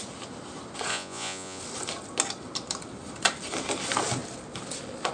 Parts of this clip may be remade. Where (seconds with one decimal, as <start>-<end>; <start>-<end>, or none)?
0.9-1.6